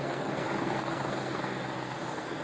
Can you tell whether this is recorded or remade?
remade